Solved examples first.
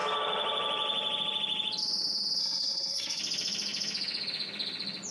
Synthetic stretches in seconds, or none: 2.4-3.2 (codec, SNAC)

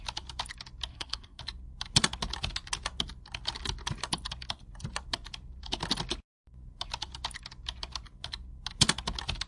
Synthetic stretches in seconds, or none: 0.9-1.4 (codec, SNAC)

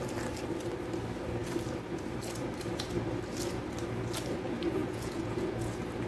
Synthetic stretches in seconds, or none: 4.8-5.5 (vocoder, Vocos)

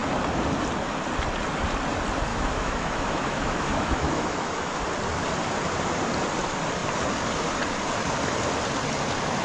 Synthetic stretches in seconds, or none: 2.3-4.8 (autoencoder, DAC-VAE)

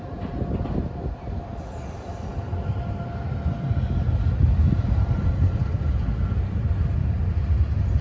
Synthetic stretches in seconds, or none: 7.0-8.0 (vocoder, BigVGAN v2)

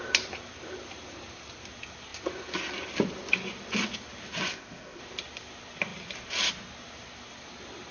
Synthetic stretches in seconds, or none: 4.5-5.0 (codec, ZipCodec)